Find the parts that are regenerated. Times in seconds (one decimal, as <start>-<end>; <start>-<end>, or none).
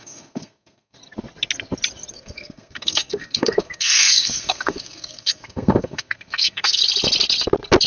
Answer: 0.0-1.0; 2.1-6.8